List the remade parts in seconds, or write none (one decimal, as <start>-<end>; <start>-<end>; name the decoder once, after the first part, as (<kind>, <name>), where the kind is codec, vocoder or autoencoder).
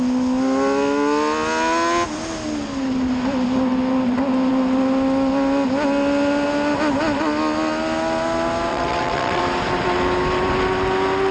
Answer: 8.7-9.4 (vocoder, WaveNeXt)